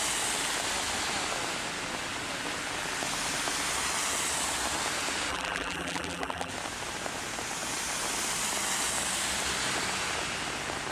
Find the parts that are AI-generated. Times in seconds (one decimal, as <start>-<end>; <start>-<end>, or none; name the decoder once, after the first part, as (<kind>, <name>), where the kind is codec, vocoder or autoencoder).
5.3-6.5 (vocoder, BigVGAN v2)